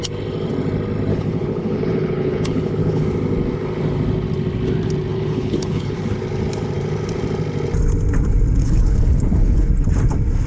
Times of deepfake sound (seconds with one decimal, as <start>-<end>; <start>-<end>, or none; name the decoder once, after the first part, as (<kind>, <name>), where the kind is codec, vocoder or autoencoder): 1.1-3.0 (codec, HILCodec); 5.1-6.0; 8.6-9.7